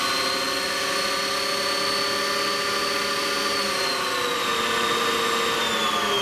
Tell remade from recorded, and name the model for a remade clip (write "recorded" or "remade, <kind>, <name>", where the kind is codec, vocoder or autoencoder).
recorded